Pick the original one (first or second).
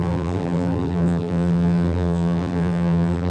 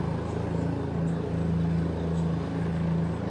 second